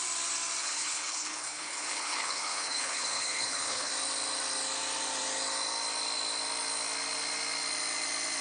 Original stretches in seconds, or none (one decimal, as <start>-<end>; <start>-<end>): 0.0-0.6; 3.9-8.4